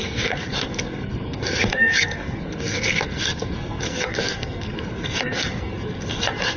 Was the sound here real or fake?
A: fake